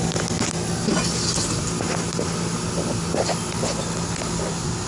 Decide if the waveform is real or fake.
real